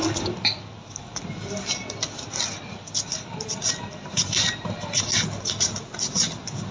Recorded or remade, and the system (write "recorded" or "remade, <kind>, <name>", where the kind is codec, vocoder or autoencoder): recorded